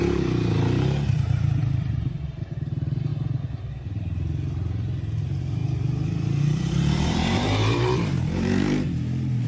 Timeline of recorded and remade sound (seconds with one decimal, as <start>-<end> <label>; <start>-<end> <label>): 0.0-1.6 remade; 1.6-2.4 recorded; 2.4-3.1 remade; 3.1-3.7 recorded; 3.7-5.6 remade; 5.6-6.4 recorded; 6.4-9.5 remade